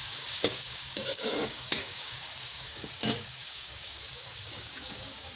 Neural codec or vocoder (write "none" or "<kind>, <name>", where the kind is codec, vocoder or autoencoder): codec, DAC